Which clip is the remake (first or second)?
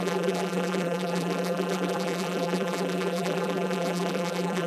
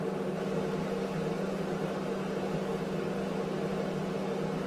first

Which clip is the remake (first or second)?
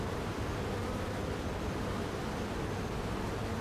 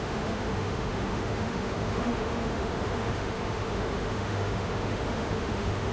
second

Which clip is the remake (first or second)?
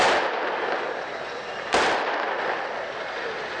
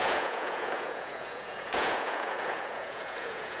second